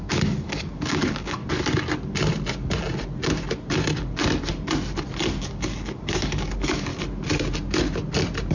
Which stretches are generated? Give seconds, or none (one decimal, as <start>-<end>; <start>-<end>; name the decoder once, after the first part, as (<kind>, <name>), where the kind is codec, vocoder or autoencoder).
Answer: 0.0-1.4 (codec, DAC); 5.4-6.9